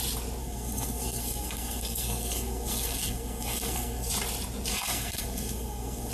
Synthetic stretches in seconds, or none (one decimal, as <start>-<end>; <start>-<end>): 0.4-4.1; 4.7-6.1